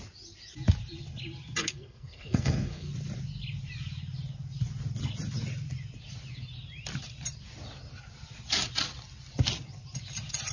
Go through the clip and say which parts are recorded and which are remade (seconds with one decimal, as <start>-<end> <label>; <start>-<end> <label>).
0.0-1.6 recorded; 1.6-2.9 remade; 2.9-10.5 recorded

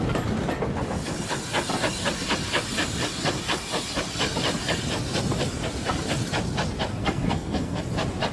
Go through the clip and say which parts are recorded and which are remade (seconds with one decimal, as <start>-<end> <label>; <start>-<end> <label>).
0.0-7.0 recorded; 7.0-7.8 remade; 7.8-8.3 recorded

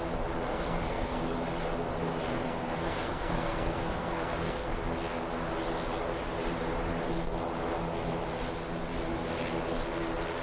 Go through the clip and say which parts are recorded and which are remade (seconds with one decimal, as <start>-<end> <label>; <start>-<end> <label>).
0.0-0.5 recorded; 0.5-1.2 remade; 1.2-2.3 recorded; 2.3-4.8 remade; 4.8-10.4 recorded

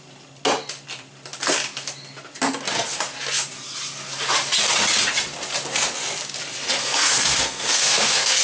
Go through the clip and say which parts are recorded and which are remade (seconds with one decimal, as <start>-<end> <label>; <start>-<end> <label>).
0.0-6.8 recorded; 6.8-8.4 remade

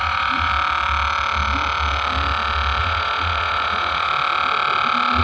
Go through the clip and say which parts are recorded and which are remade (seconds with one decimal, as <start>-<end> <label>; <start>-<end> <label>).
0.0-0.5 remade; 0.5-2.8 recorded; 2.8-4.1 remade; 4.1-5.2 recorded

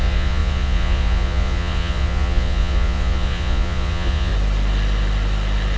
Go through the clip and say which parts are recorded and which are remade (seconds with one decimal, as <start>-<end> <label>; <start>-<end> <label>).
0.0-4.3 remade; 4.3-5.8 recorded

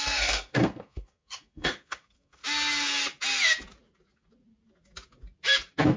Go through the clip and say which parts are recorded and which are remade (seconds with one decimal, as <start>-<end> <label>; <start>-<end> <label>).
0.0-2.4 remade; 2.4-6.0 recorded

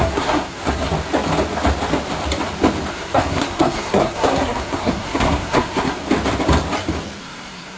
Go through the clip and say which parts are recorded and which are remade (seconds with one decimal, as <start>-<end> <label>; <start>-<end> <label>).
0.0-0.9 remade; 0.9-2.9 recorded; 2.9-6.0 remade; 6.0-7.2 recorded; 7.2-7.8 remade